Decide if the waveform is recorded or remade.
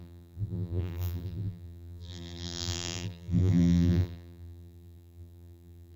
remade